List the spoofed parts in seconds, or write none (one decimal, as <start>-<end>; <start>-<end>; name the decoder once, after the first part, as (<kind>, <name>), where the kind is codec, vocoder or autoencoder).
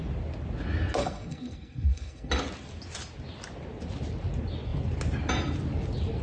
1.0-2.3 (codec, SNAC)